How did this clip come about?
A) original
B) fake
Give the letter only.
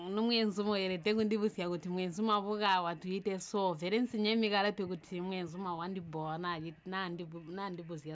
A